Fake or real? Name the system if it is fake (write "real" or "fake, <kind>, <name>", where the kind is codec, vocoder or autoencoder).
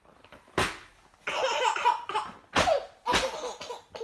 real